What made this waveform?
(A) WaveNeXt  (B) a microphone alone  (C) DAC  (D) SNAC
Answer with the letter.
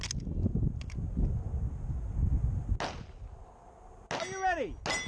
B